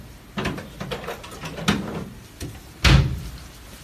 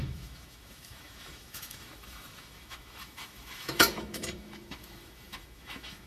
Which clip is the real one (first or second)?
first